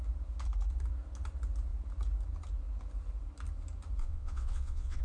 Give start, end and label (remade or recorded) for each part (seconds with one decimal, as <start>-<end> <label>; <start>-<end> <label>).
0.0-4.0 recorded; 4.0-5.0 remade